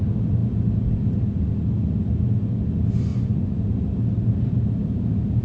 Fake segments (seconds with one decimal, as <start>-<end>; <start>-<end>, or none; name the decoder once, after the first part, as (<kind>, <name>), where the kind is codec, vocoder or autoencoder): 3.1-3.6 (vocoder, Vocos)